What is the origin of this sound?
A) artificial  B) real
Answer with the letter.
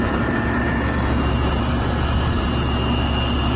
A